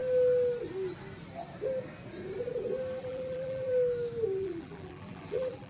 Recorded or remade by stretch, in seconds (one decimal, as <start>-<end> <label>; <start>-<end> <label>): 0.0-3.0 recorded; 3.0-3.7 remade; 3.7-4.4 recorded; 4.4-5.7 remade